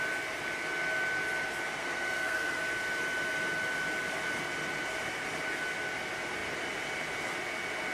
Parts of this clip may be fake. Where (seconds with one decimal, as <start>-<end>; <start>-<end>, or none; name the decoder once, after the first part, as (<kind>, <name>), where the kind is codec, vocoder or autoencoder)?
1.8-2.6 (codec, SNAC)